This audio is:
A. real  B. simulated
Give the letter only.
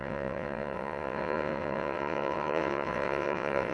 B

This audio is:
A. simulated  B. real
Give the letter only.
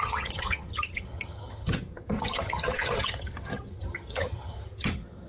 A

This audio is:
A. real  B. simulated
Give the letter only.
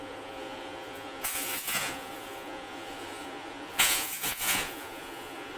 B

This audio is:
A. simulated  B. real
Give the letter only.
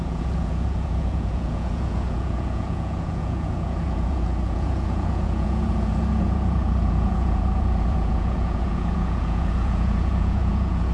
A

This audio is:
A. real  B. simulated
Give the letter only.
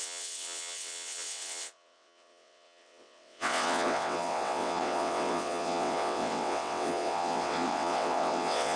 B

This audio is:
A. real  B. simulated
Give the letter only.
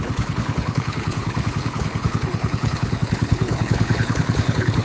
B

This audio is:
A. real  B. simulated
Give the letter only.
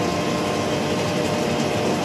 A